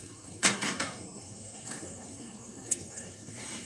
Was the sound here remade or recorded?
remade